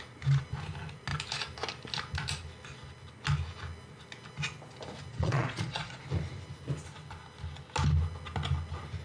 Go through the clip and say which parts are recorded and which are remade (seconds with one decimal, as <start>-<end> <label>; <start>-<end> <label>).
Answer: 0.0-5.1 recorded; 5.1-6.0 remade; 6.0-9.0 recorded